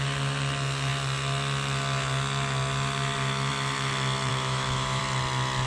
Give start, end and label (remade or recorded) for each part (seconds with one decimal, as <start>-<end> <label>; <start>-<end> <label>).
0.0-4.3 recorded; 4.3-5.0 remade; 5.0-5.7 recorded